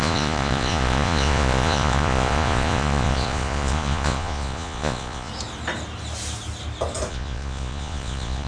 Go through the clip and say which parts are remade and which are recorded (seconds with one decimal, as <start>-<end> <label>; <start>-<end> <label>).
0.0-5.3 remade; 5.3-7.1 recorded; 7.1-8.5 remade

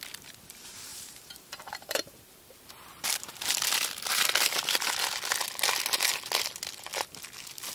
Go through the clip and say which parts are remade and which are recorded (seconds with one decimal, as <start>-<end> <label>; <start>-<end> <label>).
0.0-0.9 recorded; 0.9-2.4 remade; 2.4-2.9 recorded; 2.9-3.4 remade; 3.4-7.7 recorded

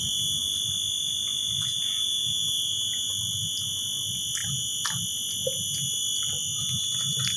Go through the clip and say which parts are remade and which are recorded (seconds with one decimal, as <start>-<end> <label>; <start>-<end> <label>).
0.0-1.7 recorded; 1.7-3.1 remade; 3.1-7.4 recorded

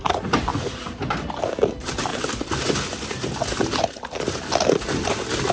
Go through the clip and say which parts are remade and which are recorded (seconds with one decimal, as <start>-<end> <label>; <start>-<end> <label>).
0.0-2.1 remade; 2.1-5.5 recorded

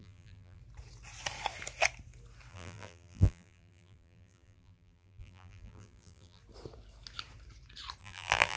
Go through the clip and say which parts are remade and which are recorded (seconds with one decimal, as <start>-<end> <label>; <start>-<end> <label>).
0.0-0.6 remade; 0.6-2.5 recorded; 2.5-6.4 remade; 6.4-8.0 recorded; 8.0-8.6 remade

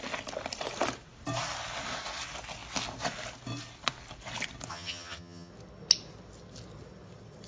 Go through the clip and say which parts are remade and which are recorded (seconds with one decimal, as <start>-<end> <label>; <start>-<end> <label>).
0.0-4.7 recorded; 4.7-5.5 remade; 5.5-7.5 recorded

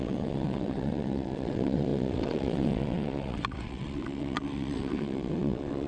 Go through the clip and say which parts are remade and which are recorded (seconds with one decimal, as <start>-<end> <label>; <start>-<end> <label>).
0.0-5.9 remade